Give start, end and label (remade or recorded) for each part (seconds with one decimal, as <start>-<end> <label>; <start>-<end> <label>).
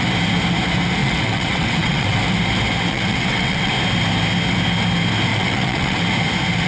0.0-1.0 recorded; 1.0-2.2 remade; 2.2-2.9 recorded; 2.9-3.7 remade; 3.7-5.3 recorded; 5.3-6.0 remade; 6.0-6.7 recorded